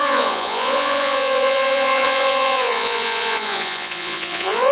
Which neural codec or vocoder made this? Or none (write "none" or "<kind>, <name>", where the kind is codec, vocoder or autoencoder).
vocoder, Vocos